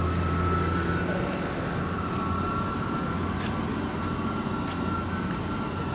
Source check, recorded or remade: recorded